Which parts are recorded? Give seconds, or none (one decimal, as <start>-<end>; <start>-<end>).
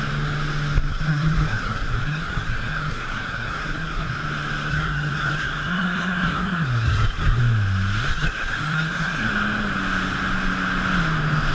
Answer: 0.0-0.9; 4.1-4.7; 7.4-8.1; 9.3-11.5